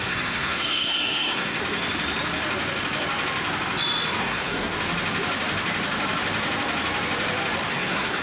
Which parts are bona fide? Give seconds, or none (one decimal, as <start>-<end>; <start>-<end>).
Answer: 1.6-4.2; 4.7-7.7